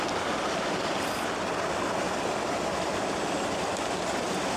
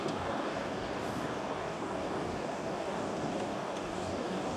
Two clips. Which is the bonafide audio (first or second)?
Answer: first